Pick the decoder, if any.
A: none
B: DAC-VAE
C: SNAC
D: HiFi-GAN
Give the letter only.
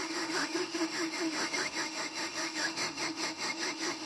B